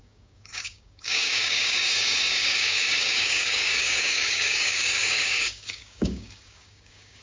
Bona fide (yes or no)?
no